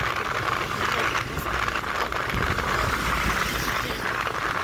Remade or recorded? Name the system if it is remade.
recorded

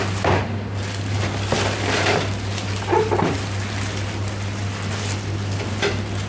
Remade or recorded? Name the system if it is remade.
remade, vocoder, BigVGAN v2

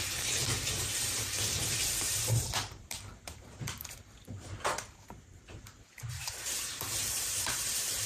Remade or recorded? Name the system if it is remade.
remade, vocoder, BigVGAN v2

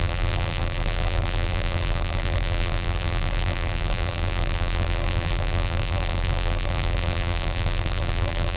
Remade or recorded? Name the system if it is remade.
remade, vocoder, BigVGAN v2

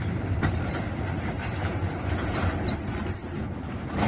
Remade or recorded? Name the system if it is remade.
remade, vocoder, BigVGAN v2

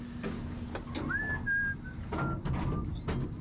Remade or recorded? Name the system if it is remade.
recorded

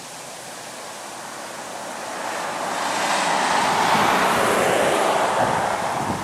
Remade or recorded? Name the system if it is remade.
recorded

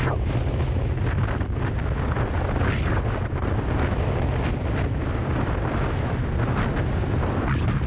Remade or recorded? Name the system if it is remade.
recorded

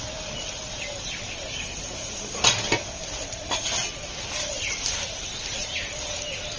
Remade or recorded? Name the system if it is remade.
remade, vocoder, BigVGAN v2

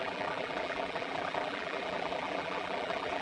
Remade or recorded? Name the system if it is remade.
remade, vocoder, BigVGAN v2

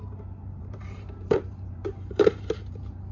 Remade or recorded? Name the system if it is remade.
remade, vocoder, BigVGAN v2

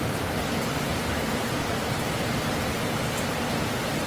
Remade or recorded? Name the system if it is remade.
recorded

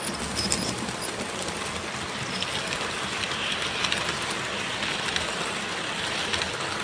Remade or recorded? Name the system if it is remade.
recorded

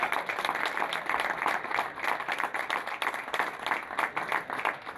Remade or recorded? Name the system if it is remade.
recorded